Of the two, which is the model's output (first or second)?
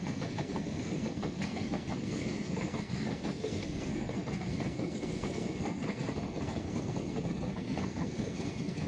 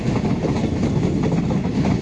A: first